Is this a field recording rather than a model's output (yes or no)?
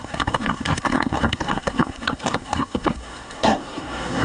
no